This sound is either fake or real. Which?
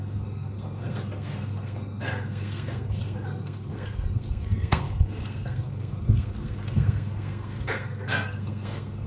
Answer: fake